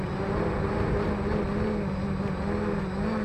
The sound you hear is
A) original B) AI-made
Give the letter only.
A